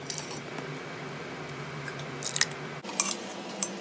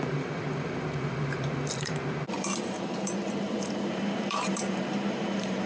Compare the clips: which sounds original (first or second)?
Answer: first